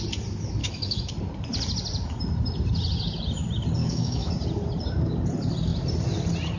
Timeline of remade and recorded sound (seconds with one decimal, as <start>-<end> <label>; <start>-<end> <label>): 0.0-0.6 recorded; 0.6-1.1 remade; 1.1-3.8 recorded; 3.8-4.3 remade; 4.3-6.6 recorded